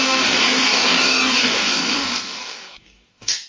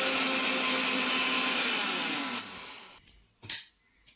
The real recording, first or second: second